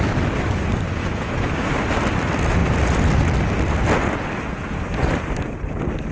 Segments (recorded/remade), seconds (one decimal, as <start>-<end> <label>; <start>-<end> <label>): 0.0-1.0 recorded; 1.0-1.7 remade; 1.7-6.1 recorded